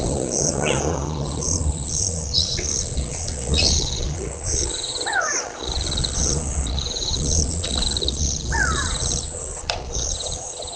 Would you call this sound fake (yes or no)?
yes